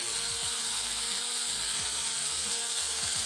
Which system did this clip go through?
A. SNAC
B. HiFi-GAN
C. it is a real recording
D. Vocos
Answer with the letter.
A